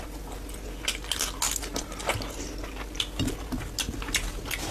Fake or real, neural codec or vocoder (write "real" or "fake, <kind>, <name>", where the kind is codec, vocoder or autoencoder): real